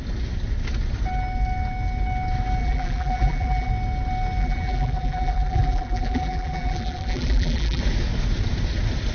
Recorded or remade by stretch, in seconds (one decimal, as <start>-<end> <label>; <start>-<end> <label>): 0.0-2.6 recorded; 2.6-3.7 remade; 3.7-4.4 recorded; 4.4-7.8 remade; 7.8-9.1 recorded